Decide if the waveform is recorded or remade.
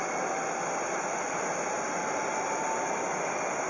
recorded